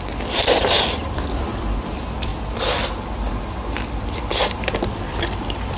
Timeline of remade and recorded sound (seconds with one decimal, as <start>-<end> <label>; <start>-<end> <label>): 0.0-2.3 remade; 2.3-4.0 recorded; 4.0-5.8 remade